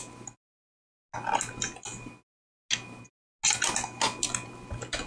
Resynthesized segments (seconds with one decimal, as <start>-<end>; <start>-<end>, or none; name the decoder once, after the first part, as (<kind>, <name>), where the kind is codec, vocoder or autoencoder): none